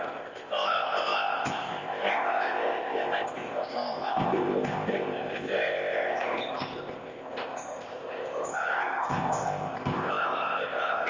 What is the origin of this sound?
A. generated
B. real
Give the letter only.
A